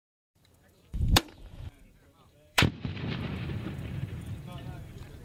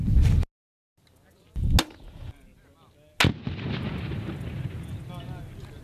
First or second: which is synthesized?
first